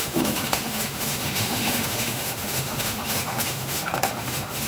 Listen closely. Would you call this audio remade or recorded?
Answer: remade